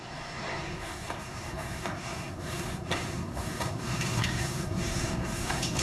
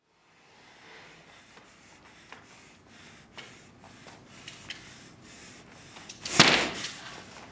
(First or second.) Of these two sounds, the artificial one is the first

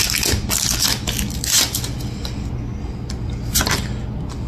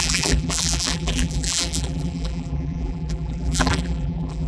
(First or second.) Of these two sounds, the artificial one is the second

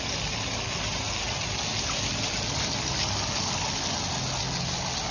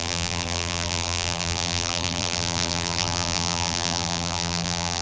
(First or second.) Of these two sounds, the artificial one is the second